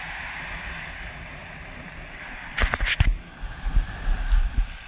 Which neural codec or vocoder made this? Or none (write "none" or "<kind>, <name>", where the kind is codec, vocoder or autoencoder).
none